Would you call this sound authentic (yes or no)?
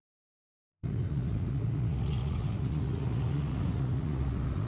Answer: no